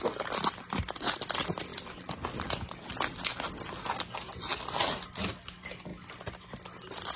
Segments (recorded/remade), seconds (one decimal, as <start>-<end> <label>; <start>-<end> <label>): 0.0-7.2 recorded